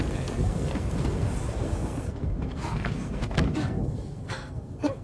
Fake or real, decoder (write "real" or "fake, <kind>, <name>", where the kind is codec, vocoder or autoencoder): fake, codec, SNAC